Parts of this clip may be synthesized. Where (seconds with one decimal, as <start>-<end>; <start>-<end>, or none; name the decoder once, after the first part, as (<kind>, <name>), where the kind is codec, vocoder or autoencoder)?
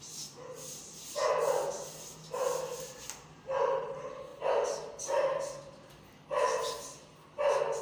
none